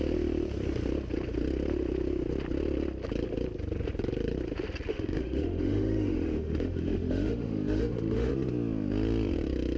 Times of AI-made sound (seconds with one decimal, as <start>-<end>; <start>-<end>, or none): 4.9-8.3